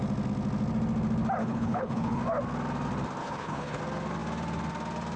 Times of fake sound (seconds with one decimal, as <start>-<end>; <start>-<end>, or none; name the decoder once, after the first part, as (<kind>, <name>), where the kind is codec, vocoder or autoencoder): 1.4-2.2 (codec, HILCodec); 3.2-3.8